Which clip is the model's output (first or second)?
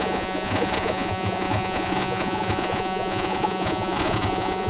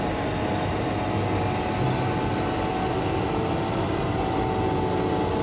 first